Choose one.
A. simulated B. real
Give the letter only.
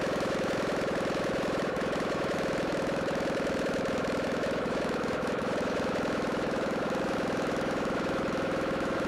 A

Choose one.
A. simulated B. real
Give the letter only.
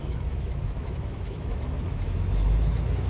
A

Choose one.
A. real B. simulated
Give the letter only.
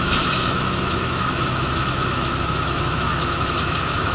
B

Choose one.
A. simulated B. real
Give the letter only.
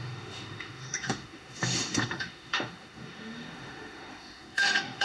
A